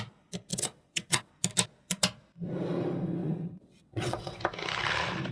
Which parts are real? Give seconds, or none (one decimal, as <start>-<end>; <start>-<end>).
0.0-0.5; 1.3-3.2; 4.4-5.3